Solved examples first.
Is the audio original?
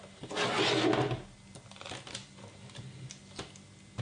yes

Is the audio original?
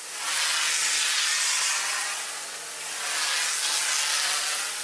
yes